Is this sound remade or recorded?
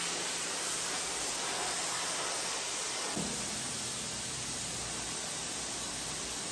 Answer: recorded